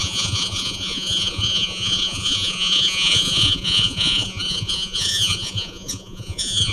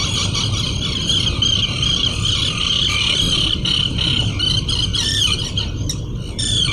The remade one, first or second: first